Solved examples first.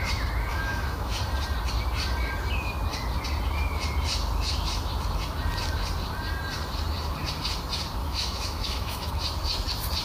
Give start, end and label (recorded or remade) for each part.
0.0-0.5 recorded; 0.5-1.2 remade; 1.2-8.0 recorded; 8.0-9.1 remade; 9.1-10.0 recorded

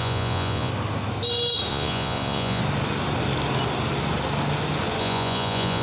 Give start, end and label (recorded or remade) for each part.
0.0-0.7 remade; 0.7-1.7 recorded; 1.7-2.6 remade; 2.6-5.0 recorded; 5.0-5.8 remade

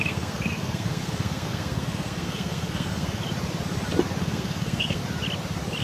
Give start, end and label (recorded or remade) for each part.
0.0-3.2 remade; 3.2-4.2 recorded; 4.2-5.0 remade; 5.0-5.8 recorded

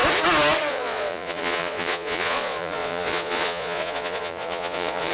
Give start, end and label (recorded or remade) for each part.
0.0-0.7 recorded; 0.7-5.1 remade